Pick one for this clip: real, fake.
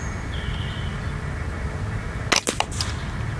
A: real